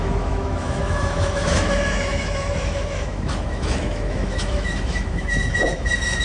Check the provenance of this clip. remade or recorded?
remade